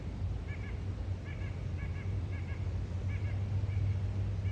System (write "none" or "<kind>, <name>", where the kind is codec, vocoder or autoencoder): none